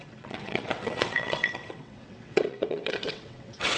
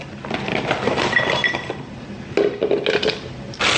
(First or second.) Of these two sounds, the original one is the second